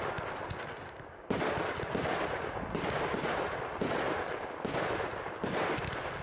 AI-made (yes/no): no